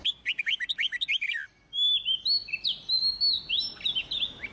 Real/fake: real